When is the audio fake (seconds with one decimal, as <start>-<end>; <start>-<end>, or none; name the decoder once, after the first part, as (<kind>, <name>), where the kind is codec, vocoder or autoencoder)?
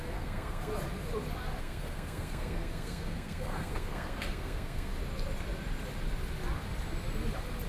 0.0-0.7 (codec, SNAC); 1.6-4.9